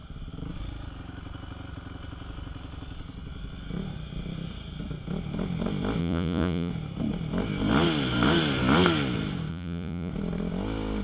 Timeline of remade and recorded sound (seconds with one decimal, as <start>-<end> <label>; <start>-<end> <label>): 0.0-6.0 recorded; 6.0-6.7 remade; 6.7-9.5 recorded; 9.5-10.1 remade; 10.1-11.0 recorded